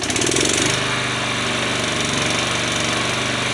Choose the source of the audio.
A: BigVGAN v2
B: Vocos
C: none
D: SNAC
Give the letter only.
C